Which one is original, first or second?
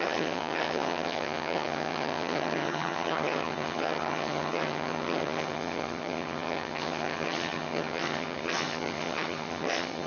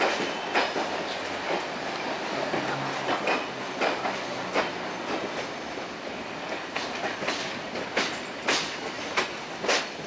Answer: second